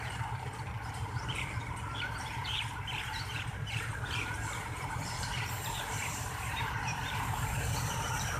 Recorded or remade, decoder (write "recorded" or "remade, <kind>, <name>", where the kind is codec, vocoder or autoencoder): remade, vocoder, BigVGAN v2